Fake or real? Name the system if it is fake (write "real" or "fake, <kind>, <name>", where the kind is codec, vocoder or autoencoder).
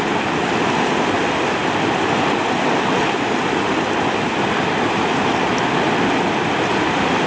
real